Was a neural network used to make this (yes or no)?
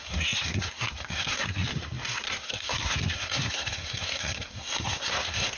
yes